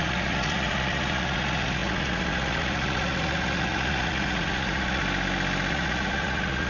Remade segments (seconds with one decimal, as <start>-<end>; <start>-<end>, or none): 0.0-5.0; 5.7-6.7